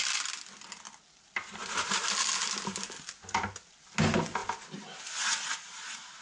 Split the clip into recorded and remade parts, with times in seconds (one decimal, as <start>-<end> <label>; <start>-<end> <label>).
0.0-6.2 recorded